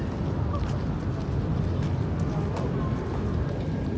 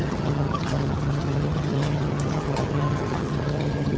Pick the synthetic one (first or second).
second